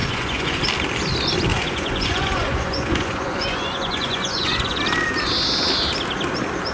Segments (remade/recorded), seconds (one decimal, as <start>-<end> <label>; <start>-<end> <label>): 0.0-0.6 remade; 0.6-1.5 recorded; 1.5-4.8 remade; 4.8-6.7 recorded